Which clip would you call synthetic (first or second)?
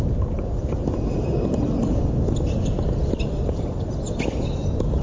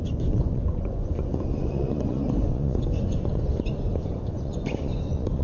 second